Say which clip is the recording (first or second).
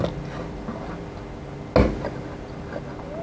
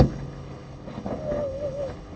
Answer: first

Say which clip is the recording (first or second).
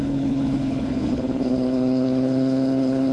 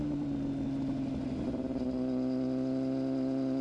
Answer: second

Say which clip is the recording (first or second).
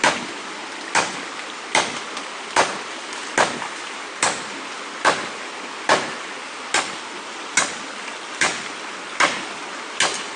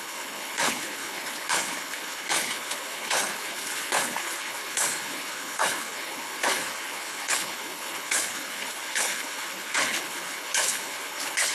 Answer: first